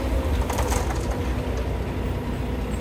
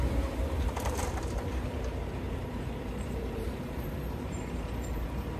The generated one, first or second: second